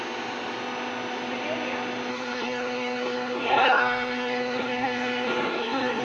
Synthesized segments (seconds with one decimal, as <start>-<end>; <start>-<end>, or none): 2.1-6.0